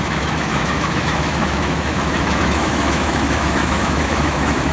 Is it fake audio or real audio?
fake